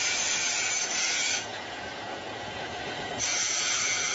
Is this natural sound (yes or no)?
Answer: no